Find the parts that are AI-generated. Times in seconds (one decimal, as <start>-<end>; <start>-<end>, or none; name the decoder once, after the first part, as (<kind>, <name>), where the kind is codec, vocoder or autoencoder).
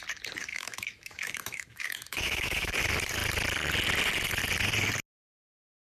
0.5-2.7 (autoencoder, DAC-VAE)